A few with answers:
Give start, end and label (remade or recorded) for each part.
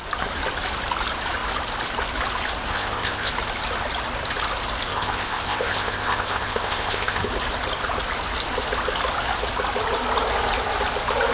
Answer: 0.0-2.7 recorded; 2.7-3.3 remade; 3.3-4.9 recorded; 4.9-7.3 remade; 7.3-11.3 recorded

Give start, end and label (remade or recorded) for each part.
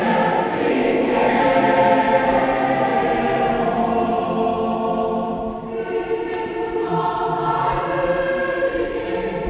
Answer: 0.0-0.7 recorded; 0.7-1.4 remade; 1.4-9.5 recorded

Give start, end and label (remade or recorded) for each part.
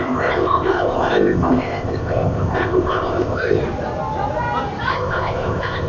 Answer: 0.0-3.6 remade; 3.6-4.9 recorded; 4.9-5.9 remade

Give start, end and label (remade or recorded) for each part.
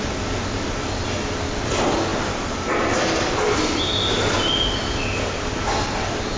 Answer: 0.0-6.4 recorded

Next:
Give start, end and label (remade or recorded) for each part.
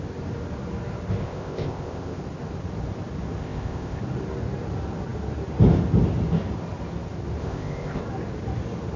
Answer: 0.0-1.2 recorded; 1.2-2.2 remade; 2.2-3.4 recorded; 3.4-4.0 remade; 4.0-7.4 recorded; 7.4-8.0 remade; 8.0-9.0 recorded